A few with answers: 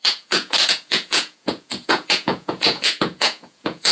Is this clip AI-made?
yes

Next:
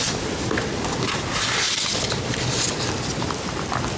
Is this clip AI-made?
no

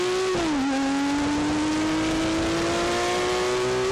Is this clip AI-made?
no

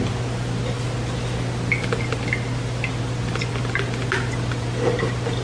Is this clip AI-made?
no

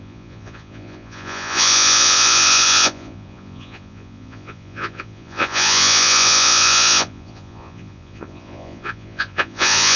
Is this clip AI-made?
yes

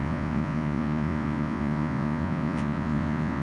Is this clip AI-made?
yes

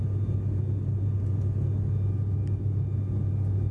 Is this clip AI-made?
no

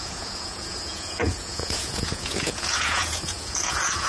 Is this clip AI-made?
yes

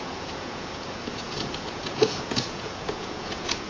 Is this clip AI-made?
yes